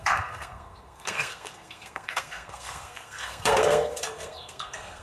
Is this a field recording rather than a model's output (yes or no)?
no